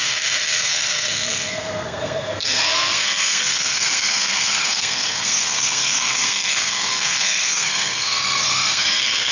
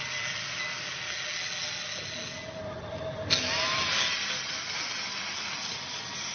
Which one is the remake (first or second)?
first